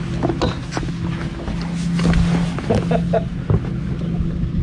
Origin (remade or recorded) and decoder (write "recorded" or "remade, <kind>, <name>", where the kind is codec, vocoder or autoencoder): recorded